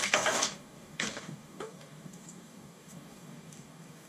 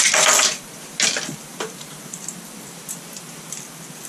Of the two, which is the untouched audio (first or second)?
second